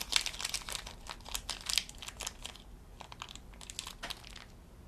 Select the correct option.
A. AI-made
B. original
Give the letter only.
B